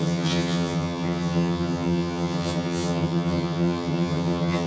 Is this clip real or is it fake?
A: fake